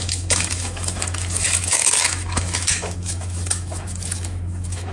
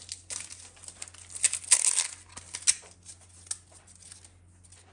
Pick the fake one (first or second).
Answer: first